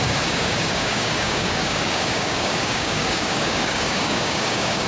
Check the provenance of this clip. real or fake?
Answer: fake